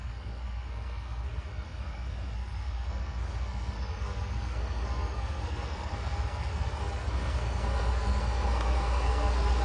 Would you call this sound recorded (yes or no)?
no